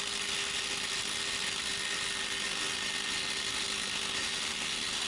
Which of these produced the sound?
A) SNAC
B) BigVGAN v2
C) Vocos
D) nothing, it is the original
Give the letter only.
D